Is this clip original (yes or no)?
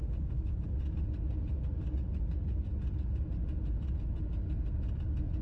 yes